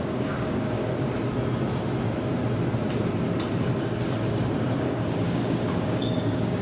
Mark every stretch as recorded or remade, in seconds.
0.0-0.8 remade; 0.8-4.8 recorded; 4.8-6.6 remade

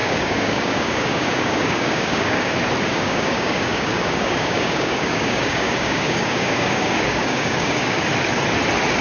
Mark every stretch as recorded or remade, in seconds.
0.0-2.5 remade; 2.5-2.9 recorded; 2.9-8.1 remade; 8.1-9.0 recorded

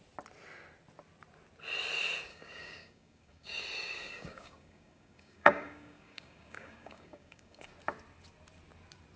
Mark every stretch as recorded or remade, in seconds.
0.0-2.3 recorded; 2.3-3.6 remade; 3.6-4.0 recorded; 4.0-7.7 remade; 7.7-9.2 recorded

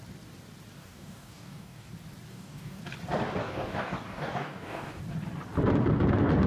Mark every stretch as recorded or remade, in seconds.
0.0-0.8 recorded; 0.8-1.9 remade; 1.9-2.3 recorded; 2.3-2.8 remade; 2.8-3.4 recorded; 3.4-5.0 remade; 5.0-6.5 recorded

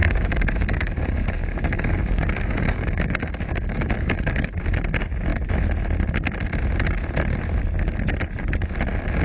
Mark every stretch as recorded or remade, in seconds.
0.0-4.6 remade; 4.6-9.2 recorded